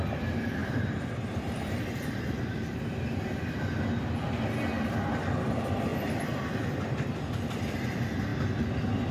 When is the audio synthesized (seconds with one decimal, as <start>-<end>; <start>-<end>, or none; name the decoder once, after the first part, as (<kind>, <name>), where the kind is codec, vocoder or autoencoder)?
0.6-1.8 (vocoder, BigVGAN v2)